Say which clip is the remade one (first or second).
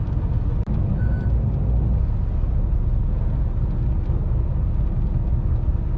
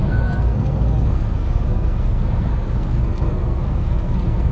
second